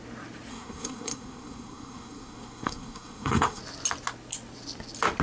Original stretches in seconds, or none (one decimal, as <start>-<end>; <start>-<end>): 0.0-0.5; 3.6-5.2